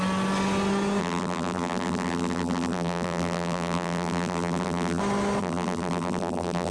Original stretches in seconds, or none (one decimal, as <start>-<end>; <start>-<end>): 0.0-1.0; 5.0-5.4